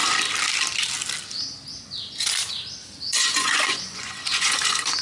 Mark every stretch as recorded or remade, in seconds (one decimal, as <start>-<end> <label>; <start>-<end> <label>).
0.0-3.0 recorded; 3.0-5.0 remade